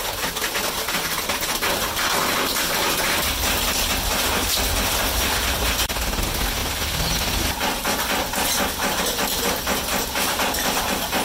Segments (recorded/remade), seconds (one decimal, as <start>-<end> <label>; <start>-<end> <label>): 0.0-11.2 recorded